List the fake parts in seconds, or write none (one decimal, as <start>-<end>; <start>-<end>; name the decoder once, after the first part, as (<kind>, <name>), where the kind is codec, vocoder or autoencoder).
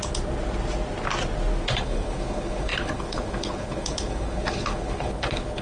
1.7-5.6 (codec, HILCodec)